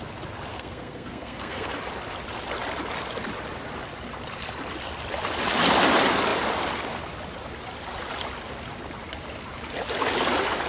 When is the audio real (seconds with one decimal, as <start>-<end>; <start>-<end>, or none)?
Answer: 0.0-0.5; 1.7-10.7